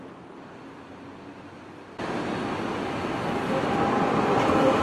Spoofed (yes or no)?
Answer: no